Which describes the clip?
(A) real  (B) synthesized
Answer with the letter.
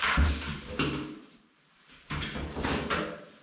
B